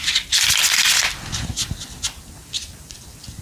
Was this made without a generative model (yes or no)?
yes